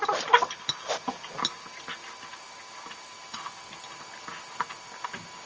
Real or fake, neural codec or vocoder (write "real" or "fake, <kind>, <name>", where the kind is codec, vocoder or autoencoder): real